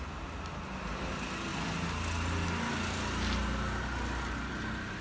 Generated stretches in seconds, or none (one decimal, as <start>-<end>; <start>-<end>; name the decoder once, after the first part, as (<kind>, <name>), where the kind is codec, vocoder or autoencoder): none